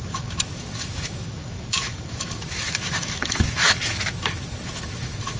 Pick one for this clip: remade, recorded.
remade